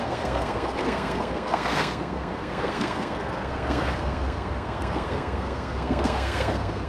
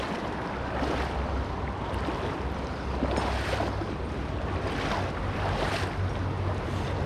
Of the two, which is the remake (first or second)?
first